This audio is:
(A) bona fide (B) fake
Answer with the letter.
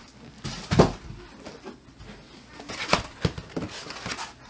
A